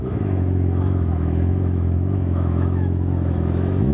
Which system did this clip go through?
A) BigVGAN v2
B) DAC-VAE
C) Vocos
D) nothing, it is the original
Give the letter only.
B